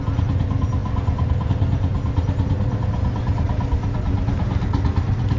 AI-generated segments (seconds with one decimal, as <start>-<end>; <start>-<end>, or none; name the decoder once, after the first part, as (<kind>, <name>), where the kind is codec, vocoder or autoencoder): none

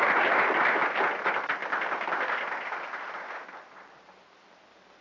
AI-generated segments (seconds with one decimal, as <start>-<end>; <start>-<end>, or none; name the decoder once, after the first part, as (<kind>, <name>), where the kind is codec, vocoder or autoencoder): none